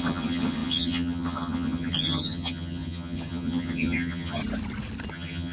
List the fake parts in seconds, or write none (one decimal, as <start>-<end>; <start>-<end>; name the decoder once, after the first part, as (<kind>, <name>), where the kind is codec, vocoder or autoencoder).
0.0-4.4 (vocoder, HiFi-GAN); 5.1-5.5